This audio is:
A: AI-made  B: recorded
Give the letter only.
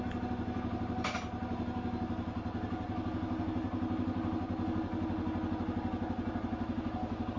B